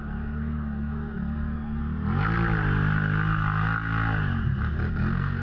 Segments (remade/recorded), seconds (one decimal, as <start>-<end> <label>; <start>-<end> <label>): 0.0-1.8 remade; 1.8-4.9 recorded; 4.9-5.4 remade

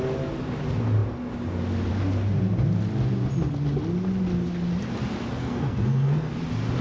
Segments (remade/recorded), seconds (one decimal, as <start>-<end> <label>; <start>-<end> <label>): 0.0-5.4 recorded; 5.4-6.3 remade; 6.3-6.8 recorded

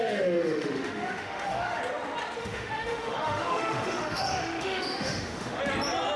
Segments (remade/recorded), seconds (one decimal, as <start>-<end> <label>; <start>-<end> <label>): 0.0-1.8 remade; 1.8-2.4 recorded; 2.4-5.6 remade; 5.6-6.2 recorded

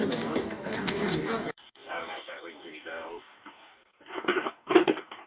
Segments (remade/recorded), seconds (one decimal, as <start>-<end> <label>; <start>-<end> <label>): 0.0-5.3 remade

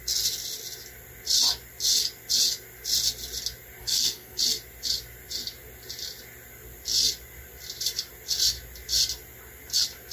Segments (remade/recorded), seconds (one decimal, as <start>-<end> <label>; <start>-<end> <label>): 0.0-3.8 recorded; 3.8-4.4 remade; 4.4-10.1 recorded